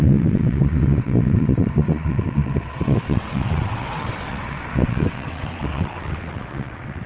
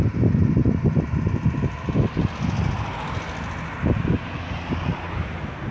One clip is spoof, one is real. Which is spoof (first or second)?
first